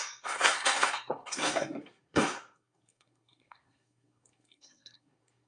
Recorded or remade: remade